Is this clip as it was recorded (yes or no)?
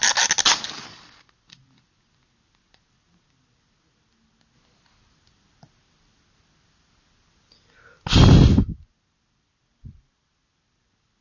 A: yes